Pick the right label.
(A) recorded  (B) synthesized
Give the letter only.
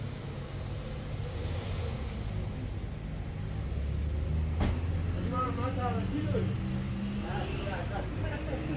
A